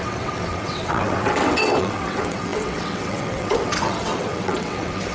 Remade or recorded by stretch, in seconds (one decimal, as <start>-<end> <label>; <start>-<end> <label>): 0.0-5.1 remade